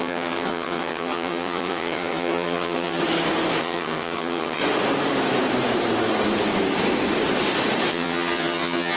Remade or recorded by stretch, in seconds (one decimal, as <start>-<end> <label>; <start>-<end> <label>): 0.0-3.0 remade; 3.0-3.6 recorded; 3.6-4.6 remade; 4.6-7.9 recorded; 7.9-9.0 remade